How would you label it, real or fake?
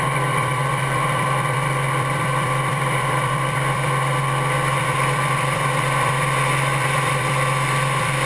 fake